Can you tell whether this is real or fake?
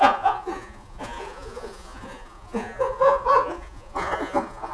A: fake